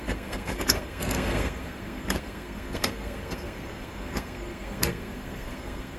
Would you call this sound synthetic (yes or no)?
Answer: yes